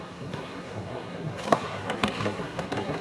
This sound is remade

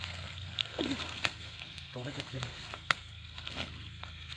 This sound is remade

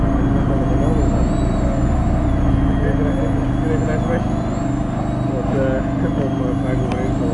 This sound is recorded